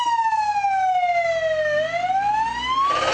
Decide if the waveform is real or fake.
real